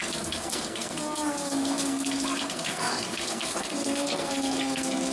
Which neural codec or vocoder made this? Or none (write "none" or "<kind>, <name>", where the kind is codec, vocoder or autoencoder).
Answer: codec, SNAC